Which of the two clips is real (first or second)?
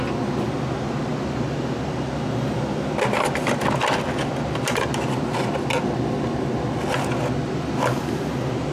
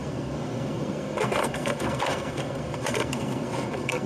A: first